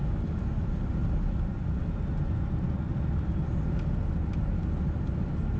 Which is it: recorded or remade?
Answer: recorded